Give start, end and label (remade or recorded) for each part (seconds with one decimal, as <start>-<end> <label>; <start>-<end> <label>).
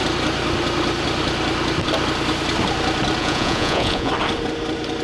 0.0-3.2 recorded; 3.2-4.1 remade; 4.1-5.0 recorded